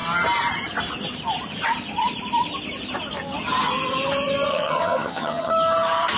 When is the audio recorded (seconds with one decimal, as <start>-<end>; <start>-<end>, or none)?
0.0-4.5; 5.5-6.2